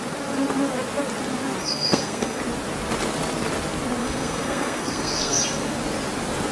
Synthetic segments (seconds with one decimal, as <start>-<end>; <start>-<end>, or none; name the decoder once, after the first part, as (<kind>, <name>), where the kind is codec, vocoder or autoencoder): 1.6-2.4 (codec, SNAC); 4.0-5.4